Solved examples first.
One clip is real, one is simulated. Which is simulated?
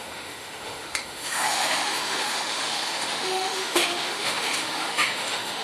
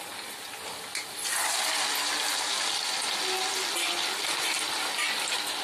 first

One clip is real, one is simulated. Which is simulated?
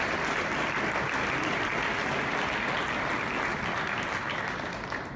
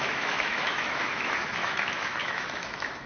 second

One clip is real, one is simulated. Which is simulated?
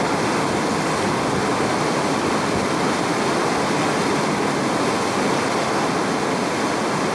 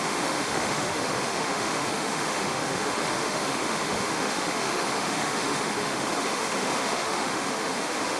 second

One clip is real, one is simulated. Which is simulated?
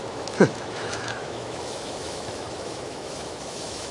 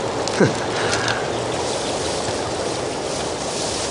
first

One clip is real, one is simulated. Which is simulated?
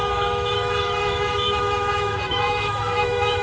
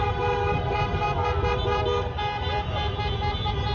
first